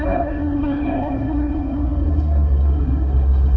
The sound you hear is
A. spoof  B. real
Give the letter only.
A